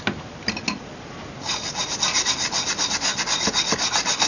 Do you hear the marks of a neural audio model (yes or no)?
no